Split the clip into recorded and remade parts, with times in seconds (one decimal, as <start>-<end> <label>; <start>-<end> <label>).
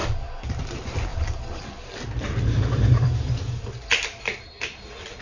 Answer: 0.0-5.2 remade